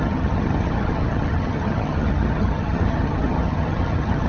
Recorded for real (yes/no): no